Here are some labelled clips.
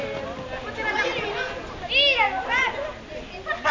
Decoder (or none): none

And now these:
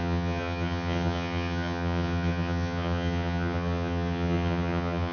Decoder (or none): vocoder, HiFi-GAN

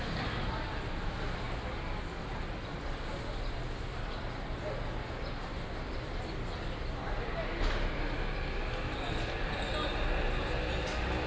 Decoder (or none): none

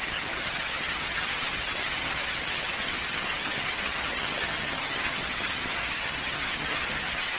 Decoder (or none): vocoder, HiFi-GAN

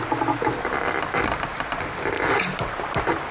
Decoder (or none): none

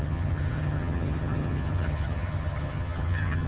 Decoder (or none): vocoder, HiFi-GAN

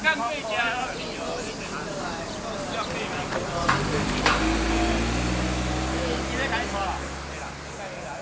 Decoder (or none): none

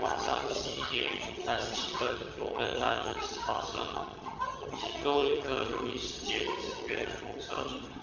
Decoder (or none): vocoder, HiFi-GAN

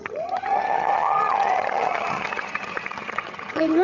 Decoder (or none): vocoder, HiFi-GAN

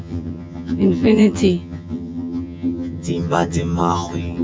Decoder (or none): vocoder, HiFi-GAN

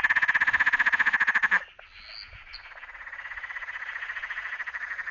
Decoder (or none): none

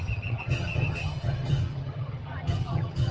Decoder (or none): vocoder, HiFi-GAN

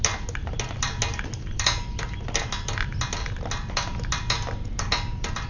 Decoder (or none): none